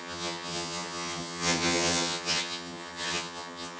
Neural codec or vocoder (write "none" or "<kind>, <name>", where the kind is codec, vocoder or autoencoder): vocoder, HiFi-GAN